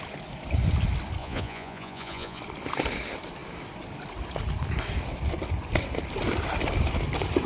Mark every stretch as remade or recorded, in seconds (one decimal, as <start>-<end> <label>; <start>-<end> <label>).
0.0-1.2 recorded; 1.2-2.4 remade; 2.4-7.5 recorded